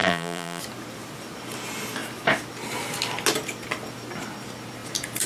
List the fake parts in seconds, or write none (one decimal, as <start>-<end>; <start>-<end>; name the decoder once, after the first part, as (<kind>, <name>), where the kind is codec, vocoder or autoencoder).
0.0-0.6 (vocoder, BigVGAN v2)